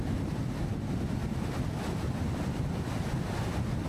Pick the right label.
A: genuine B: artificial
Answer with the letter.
A